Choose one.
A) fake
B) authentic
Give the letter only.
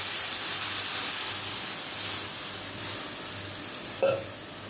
B